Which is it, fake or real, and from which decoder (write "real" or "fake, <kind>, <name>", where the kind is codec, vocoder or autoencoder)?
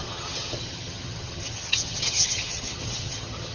fake, vocoder, HiFi-GAN